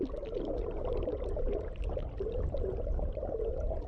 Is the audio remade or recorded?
recorded